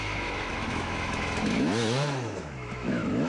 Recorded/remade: remade